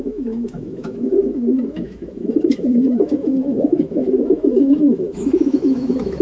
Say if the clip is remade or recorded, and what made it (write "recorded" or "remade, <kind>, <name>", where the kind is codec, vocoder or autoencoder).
remade, autoencoder, DAC-VAE